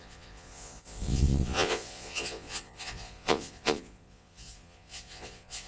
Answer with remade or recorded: remade